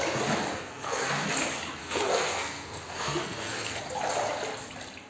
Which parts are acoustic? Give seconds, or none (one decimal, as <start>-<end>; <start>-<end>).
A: 0.0-0.5; 1.3-1.8; 3.8-5.1